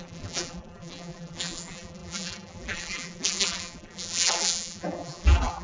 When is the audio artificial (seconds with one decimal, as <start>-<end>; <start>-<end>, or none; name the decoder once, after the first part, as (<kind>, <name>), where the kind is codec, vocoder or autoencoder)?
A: 0.0-5.6 (vocoder, BigVGAN v2)